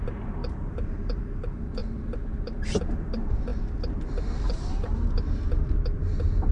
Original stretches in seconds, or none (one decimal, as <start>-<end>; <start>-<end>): 1.8-2.9; 3.5-4.4